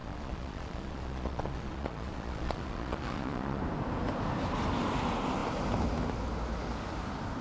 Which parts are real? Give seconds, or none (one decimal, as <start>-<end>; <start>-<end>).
3.6-7.4